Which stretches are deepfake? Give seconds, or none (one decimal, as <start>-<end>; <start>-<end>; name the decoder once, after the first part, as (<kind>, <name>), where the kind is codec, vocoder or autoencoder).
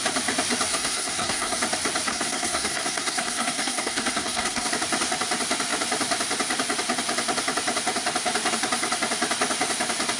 0.7-1.6 (codec, SNAC); 2.1-4.7